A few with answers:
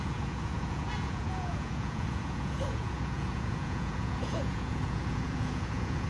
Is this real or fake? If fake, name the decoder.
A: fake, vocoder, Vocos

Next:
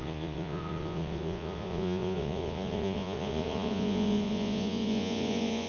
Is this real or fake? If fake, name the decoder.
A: fake, vocoder, Vocos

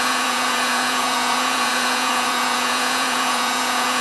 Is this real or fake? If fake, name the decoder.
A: fake, vocoder, Vocos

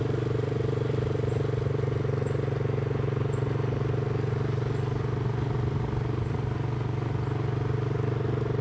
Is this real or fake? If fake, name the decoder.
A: real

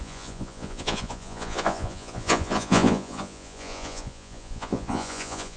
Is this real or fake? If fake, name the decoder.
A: fake, vocoder, Vocos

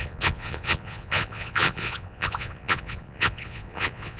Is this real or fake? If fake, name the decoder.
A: fake, vocoder, Vocos